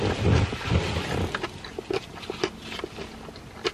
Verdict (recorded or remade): recorded